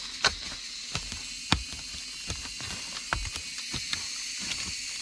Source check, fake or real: real